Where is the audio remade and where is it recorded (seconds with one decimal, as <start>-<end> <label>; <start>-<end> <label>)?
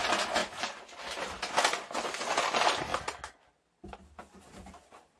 0.0-5.2 recorded